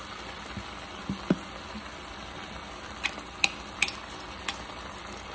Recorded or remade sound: recorded